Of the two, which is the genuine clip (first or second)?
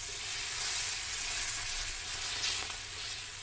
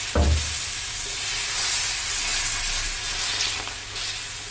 second